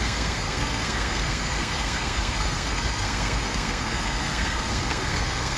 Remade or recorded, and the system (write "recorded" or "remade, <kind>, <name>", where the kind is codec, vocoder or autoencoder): remade, codec, SNAC